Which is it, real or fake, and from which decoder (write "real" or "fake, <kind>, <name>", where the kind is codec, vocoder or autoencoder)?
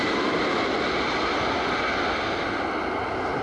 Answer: real